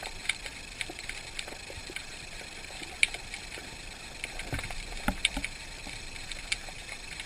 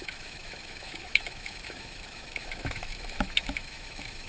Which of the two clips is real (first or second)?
first